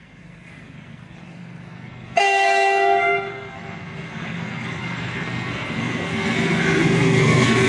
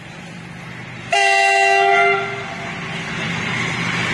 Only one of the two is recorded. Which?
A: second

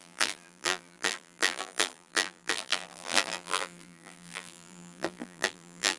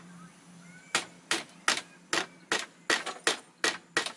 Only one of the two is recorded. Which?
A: second